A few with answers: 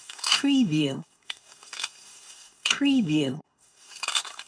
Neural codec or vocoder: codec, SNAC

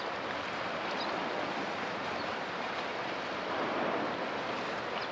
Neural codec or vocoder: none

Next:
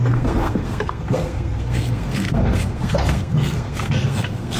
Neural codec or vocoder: codec, SNAC